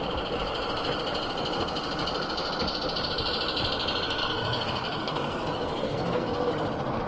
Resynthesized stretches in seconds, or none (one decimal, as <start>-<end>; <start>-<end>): 4.2-6.5